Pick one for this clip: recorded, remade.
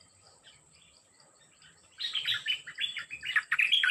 remade